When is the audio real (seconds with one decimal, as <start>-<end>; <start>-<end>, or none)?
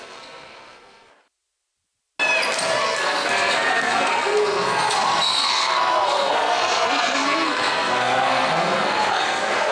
1.1-2.8